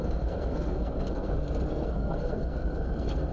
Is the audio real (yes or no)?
no